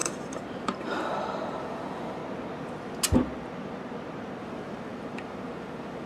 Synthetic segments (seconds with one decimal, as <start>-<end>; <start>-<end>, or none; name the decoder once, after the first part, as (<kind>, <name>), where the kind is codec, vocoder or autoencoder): 0.0-2.2 (vocoder, BigVGAN v2); 4.4-6.1